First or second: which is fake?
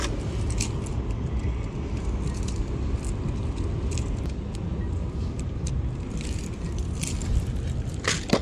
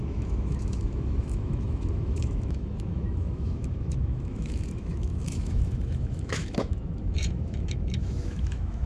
second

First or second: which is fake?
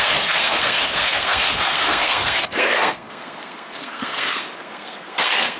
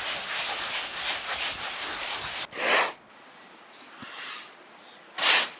first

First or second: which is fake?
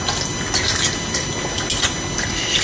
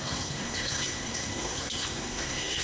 second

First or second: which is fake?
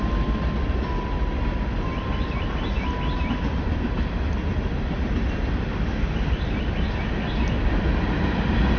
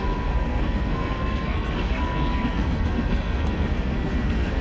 second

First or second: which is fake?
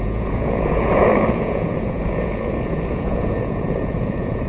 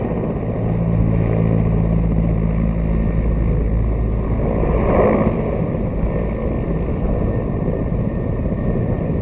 first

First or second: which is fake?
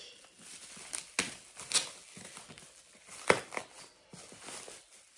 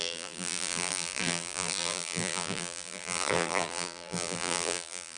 second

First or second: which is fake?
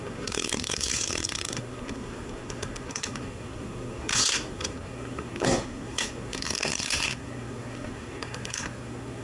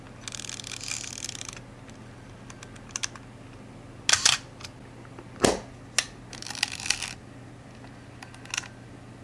first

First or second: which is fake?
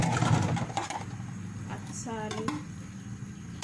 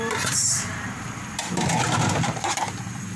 second